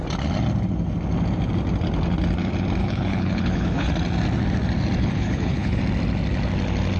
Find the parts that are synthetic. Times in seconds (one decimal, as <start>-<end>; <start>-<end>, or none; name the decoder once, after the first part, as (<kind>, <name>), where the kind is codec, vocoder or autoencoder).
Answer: 2.8-3.9 (codec, HILCodec); 5.0-5.8